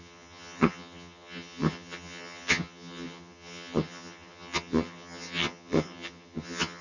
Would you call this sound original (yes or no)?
no